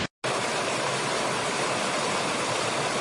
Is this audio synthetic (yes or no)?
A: no